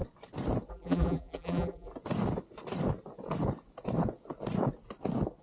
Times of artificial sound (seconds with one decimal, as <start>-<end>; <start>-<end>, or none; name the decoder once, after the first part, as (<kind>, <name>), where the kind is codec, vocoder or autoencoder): 0.7-1.9 (vocoder, BigVGAN v2)